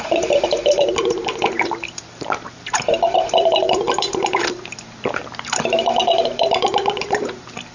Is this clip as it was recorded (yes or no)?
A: no